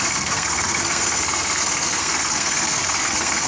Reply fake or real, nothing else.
fake